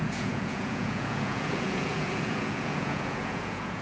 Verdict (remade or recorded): remade